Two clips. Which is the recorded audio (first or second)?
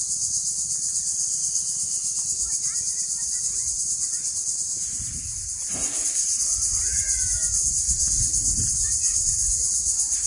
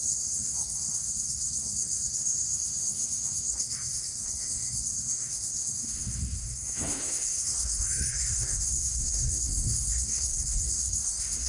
first